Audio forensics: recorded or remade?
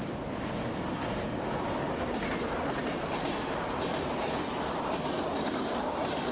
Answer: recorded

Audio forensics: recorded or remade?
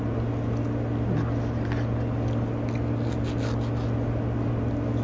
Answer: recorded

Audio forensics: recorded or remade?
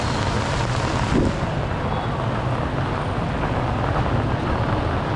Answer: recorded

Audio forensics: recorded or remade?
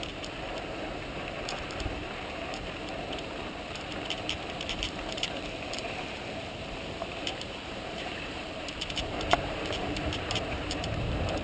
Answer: remade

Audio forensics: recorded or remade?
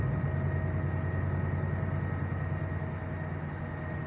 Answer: recorded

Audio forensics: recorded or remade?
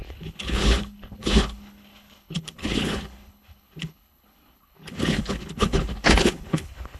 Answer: remade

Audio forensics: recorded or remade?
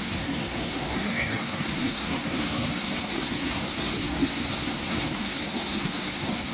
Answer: remade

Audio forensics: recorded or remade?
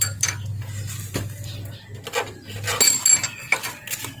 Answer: recorded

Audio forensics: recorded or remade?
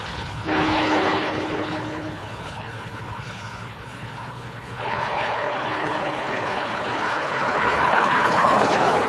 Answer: remade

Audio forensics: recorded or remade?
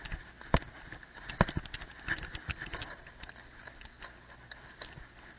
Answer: recorded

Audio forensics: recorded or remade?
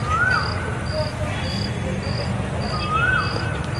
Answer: recorded